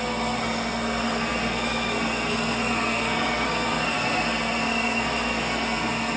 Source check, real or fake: fake